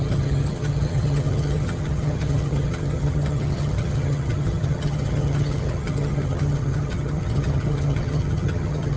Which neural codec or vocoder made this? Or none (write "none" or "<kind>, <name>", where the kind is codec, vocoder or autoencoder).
vocoder, HiFi-GAN